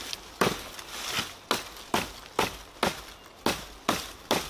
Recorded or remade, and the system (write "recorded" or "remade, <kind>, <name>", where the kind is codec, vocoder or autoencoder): recorded